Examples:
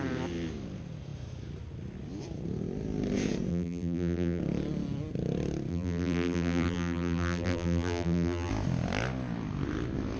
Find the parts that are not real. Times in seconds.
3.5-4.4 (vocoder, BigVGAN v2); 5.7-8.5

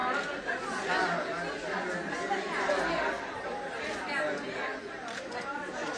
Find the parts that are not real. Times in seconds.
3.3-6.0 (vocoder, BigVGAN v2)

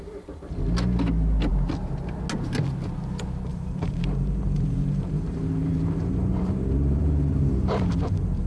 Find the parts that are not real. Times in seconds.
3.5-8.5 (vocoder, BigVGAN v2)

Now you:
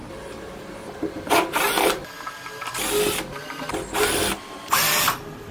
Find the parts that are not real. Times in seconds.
0.0-2.0 (vocoder, BigVGAN v2)

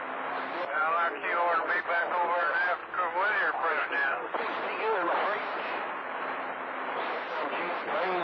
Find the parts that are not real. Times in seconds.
0.0-0.8 (vocoder, BigVGAN v2); 2.0-2.8; 3.7-8.2